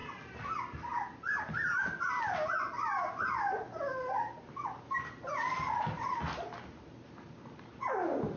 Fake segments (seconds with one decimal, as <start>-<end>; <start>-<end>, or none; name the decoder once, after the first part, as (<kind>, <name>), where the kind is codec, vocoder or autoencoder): none